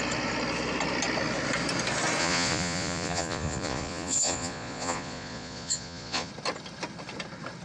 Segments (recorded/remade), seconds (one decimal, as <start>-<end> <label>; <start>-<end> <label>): 0.0-2.2 recorded; 2.2-6.3 remade; 6.3-7.6 recorded